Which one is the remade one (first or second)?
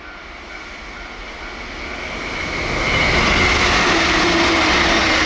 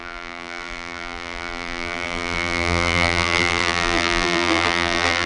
second